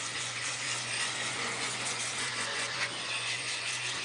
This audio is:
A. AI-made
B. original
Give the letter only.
A